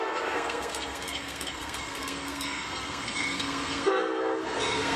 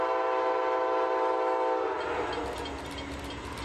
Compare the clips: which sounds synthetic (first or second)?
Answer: first